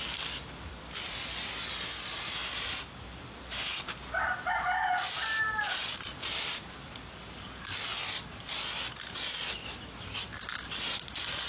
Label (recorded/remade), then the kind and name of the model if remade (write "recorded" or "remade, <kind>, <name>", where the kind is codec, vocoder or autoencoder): recorded